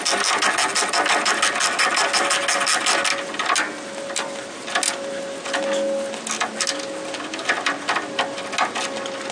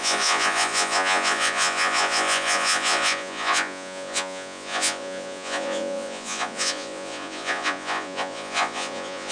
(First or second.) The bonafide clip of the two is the first